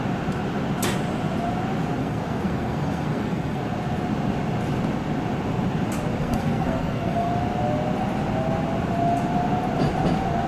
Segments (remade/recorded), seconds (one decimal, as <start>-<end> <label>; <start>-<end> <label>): 0.0-2.0 recorded; 2.0-3.6 remade; 3.6-6.2 recorded; 6.2-7.3 remade; 7.3-10.5 recorded